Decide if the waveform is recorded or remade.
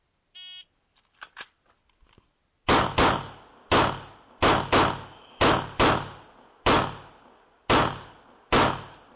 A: recorded